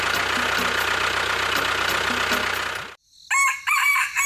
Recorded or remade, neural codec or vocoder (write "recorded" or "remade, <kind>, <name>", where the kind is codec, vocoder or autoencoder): recorded